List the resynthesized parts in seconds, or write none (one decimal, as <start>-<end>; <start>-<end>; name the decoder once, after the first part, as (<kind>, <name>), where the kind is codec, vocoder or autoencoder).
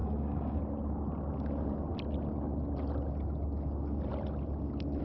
0.0-0.6 (codec, DAC)